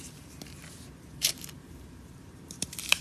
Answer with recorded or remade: remade